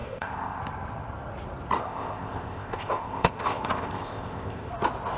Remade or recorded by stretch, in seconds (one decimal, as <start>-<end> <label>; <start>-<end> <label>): 0.0-0.6 remade; 0.6-1.8 recorded; 1.8-4.7 remade; 4.7-5.2 recorded